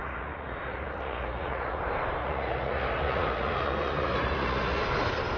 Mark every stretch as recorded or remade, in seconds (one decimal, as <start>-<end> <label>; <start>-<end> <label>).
0.0-1.8 remade; 1.8-2.2 recorded; 2.2-4.8 remade; 4.8-5.4 recorded